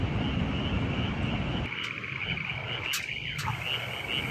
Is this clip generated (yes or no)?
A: no